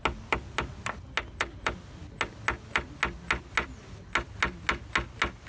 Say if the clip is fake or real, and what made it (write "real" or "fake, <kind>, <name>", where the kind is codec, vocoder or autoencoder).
real